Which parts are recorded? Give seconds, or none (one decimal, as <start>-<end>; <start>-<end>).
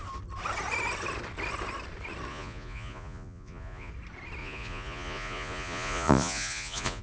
0.0-2.3; 3.9-4.4